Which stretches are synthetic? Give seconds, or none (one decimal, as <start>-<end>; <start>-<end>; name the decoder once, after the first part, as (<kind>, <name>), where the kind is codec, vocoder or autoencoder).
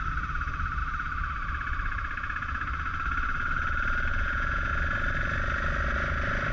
4.1-4.7 (vocoder, Vocos)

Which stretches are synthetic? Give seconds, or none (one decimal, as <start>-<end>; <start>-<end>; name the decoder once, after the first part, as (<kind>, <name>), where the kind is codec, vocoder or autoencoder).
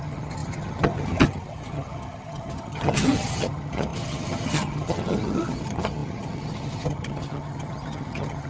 0.0-8.5 (vocoder, HiFi-GAN)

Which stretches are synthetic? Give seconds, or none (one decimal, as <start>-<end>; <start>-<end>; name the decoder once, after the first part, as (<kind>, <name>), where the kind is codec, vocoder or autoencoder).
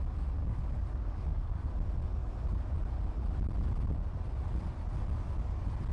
0.4-1.7 (codec, DAC)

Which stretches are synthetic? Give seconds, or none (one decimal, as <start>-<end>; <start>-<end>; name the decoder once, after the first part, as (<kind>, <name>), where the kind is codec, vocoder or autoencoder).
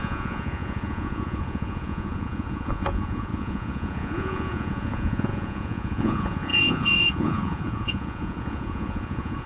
0.0-9.5 (vocoder, Vocos)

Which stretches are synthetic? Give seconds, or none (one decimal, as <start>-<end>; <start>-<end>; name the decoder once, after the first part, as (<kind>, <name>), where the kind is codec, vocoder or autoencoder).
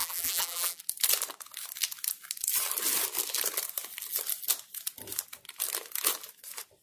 0.0-0.8 (vocoder, BigVGAN v2)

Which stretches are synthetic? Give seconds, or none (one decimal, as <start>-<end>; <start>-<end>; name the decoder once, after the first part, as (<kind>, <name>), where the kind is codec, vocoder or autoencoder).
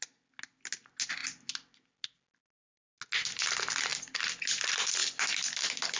none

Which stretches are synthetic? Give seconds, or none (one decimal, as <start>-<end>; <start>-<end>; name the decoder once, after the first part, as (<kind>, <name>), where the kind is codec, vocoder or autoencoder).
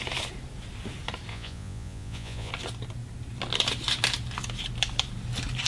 1.3-2.5 (vocoder, Vocos)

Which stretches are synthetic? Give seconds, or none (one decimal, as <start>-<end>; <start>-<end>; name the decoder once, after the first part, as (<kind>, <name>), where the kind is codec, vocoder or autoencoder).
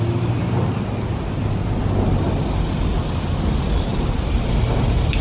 none